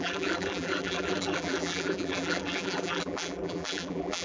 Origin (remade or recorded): remade